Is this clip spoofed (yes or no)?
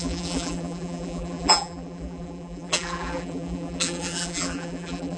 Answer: yes